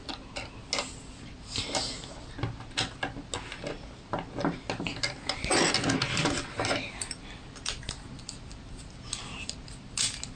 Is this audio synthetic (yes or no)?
no